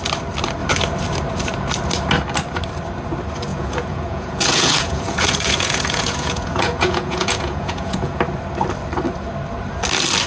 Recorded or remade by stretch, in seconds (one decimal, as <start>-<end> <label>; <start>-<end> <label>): 0.0-3.5 recorded; 3.5-8.2 remade; 8.2-10.3 recorded